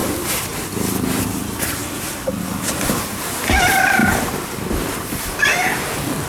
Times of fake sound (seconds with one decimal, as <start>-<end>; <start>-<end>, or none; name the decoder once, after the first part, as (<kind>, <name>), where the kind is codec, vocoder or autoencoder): none